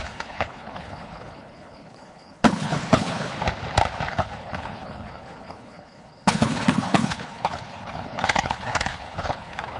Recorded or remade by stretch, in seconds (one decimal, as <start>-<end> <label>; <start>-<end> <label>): 0.0-3.3 remade; 3.3-4.1 recorded; 4.1-9.8 remade

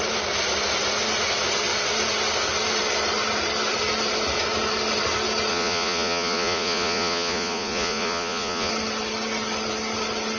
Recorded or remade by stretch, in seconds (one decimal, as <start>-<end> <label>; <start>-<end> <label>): 0.0-5.5 recorded; 5.5-8.7 remade; 8.7-10.4 recorded

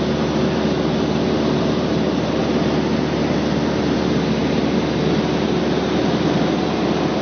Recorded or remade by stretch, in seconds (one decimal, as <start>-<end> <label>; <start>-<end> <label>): 0.0-7.2 recorded

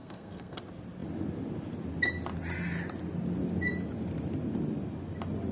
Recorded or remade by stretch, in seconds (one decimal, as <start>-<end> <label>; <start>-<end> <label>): 0.0-0.6 remade; 0.6-5.5 recorded

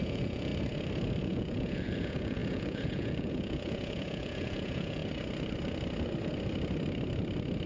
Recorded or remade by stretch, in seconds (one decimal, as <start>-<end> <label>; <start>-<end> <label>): 0.0-0.5 remade; 0.5-1.2 recorded; 1.2-5.0 remade; 5.0-7.7 recorded

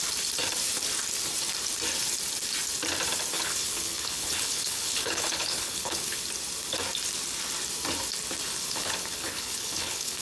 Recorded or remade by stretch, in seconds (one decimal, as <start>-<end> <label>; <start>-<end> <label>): 0.0-3.3 recorded; 3.3-6.2 remade; 6.2-8.5 recorded; 8.5-10.2 remade

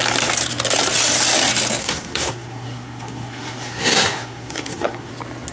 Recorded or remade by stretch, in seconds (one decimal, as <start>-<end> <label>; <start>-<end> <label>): 0.0-1.8 recorded; 1.8-5.1 remade; 5.1-5.5 recorded

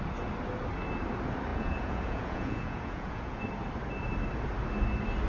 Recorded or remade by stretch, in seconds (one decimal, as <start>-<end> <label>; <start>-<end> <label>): 0.0-1.5 recorded; 1.5-3.4 remade; 3.4-5.3 recorded